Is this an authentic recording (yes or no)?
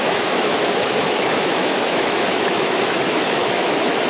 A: no